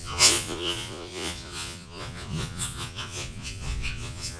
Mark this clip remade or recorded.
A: remade